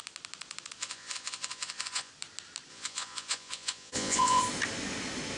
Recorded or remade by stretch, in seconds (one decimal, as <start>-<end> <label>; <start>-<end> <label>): 0.0-0.8 recorded; 0.8-2.1 remade; 2.1-2.7 recorded; 2.7-4.4 remade; 4.4-5.4 recorded